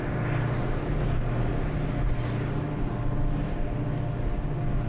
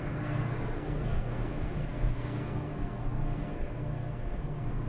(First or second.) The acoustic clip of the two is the first